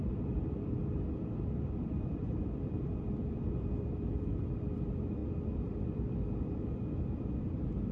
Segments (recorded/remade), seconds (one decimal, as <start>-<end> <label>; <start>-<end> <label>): 0.0-4.4 remade; 4.4-5.2 recorded; 5.2-7.9 remade